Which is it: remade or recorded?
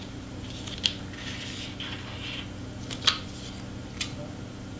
recorded